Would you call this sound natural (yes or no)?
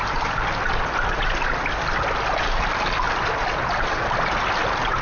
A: yes